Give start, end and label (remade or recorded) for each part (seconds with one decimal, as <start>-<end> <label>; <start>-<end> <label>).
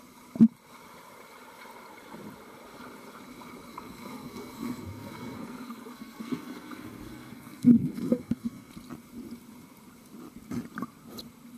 0.0-3.7 recorded; 3.7-8.7 remade; 8.7-11.6 recorded